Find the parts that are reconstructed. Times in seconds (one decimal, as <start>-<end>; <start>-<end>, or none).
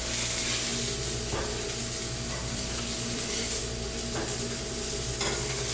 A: 2.4-3.6